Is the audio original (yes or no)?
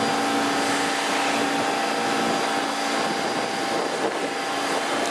yes